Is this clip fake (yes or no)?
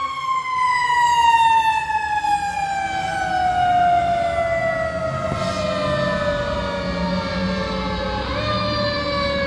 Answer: no